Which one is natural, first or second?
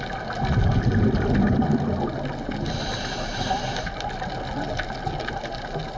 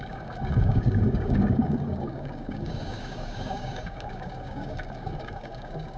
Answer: first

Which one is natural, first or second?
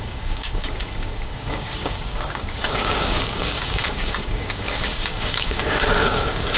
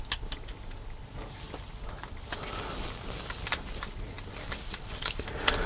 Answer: second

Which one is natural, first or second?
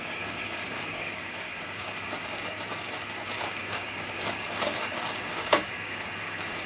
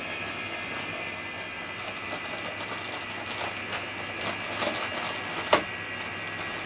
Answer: second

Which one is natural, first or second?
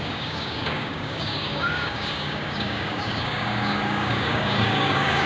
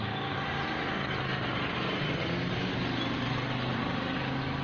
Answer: second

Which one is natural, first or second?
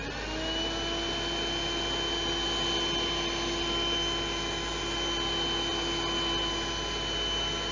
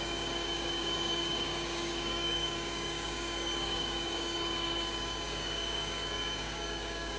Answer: first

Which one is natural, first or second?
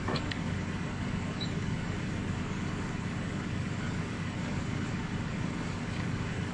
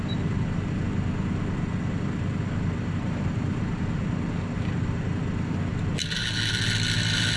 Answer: second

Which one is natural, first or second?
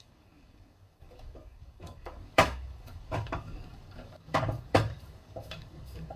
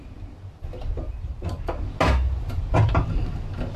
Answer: second